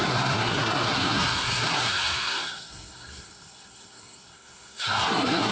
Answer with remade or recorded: remade